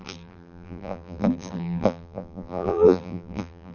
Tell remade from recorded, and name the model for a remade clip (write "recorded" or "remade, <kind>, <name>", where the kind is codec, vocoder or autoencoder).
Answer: remade, vocoder, BigVGAN v2